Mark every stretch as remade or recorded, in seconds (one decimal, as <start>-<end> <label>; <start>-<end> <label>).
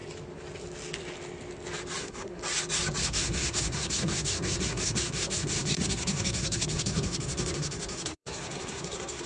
0.0-2.0 recorded; 2.0-2.4 remade; 2.4-3.0 recorded; 3.0-9.3 remade